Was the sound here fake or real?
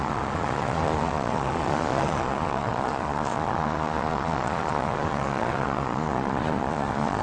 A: fake